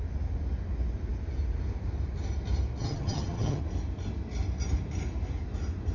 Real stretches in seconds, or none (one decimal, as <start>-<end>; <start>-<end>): 0.0-2.8; 3.6-5.9